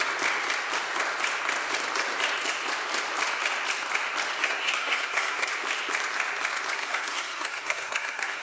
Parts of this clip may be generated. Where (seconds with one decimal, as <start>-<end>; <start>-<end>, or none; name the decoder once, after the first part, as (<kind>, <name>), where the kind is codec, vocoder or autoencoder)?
4.4-5.5 (codec, SNAC); 6.7-8.4